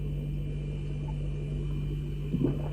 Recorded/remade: recorded